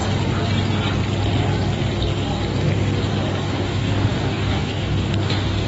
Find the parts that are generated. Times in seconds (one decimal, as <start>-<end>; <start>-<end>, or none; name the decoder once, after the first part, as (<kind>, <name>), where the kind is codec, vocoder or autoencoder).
3.4-5.7 (codec, DAC)